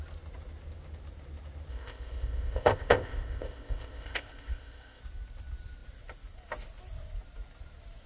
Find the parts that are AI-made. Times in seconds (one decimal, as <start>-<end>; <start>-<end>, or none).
1.7-5.0